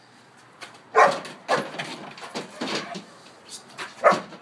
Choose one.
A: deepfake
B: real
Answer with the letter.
B